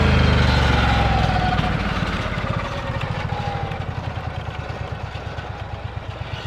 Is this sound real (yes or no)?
yes